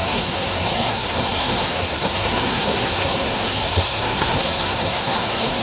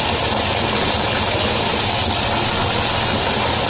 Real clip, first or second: second